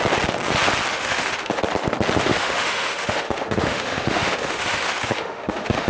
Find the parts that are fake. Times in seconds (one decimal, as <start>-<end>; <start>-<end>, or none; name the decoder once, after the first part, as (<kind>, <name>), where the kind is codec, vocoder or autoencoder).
0.9-1.6 (autoencoder, DAC-VAE); 2.2-5.9